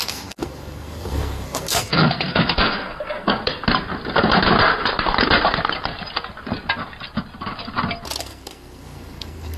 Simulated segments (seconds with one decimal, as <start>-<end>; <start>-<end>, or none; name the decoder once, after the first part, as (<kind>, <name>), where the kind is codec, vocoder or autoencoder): 0.0-3.4 (codec, SNAC); 8.2-9.6

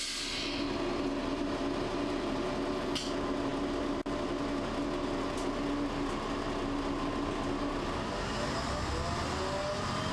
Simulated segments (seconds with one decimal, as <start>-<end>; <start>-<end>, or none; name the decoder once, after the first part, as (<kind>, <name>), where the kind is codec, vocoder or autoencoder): none